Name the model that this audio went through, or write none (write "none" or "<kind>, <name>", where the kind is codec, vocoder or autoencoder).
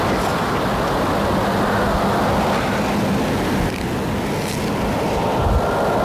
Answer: none